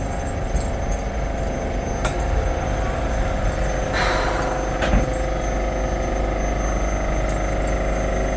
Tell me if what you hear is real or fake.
real